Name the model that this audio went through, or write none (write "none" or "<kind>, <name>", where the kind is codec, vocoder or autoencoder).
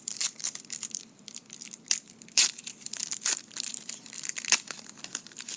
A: vocoder, BigVGAN v2